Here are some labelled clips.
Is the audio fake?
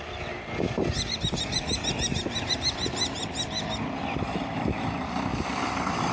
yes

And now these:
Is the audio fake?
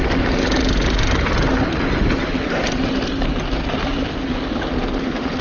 no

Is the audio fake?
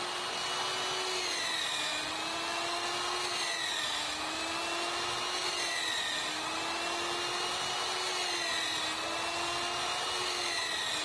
no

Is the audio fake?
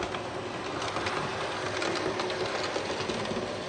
no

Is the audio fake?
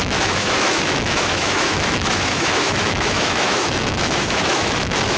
yes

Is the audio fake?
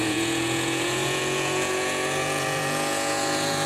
yes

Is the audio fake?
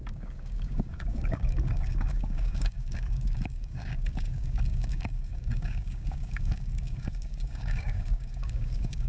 yes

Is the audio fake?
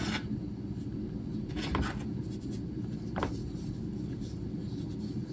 no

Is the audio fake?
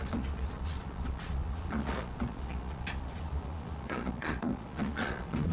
yes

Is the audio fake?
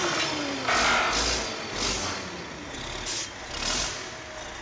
no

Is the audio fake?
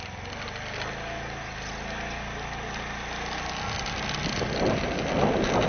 no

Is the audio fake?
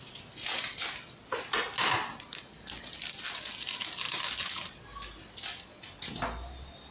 no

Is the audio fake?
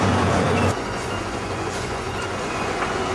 yes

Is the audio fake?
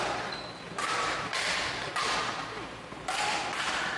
no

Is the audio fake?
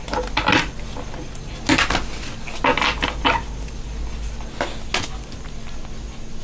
no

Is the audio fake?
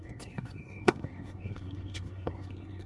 yes